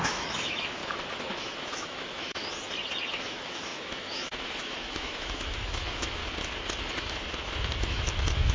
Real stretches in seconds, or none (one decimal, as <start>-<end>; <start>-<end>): 0.8-1.4; 2.4-3.1; 6.2-7.8